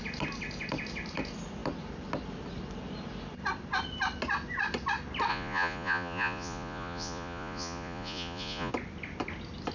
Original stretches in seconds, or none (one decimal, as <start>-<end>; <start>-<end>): 0.0-5.3; 8.7-9.7